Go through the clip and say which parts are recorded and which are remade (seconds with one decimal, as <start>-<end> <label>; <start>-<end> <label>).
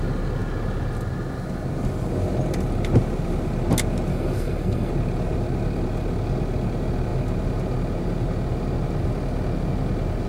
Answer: 0.0-4.1 recorded; 4.1-4.9 remade; 4.9-10.3 recorded